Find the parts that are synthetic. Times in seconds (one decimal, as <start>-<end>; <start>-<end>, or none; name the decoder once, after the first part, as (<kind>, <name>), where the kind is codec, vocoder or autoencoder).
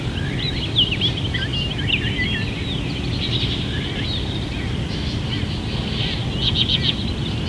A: none